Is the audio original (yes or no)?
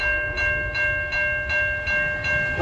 yes